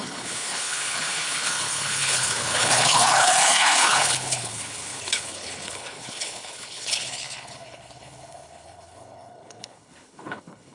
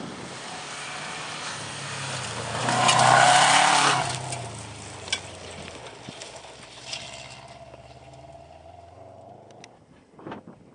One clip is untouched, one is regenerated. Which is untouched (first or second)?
second